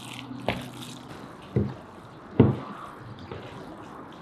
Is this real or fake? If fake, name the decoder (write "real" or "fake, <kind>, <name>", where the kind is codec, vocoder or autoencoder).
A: real